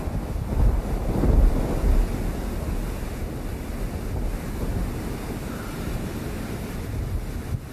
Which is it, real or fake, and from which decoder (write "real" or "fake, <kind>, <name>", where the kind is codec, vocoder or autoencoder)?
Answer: real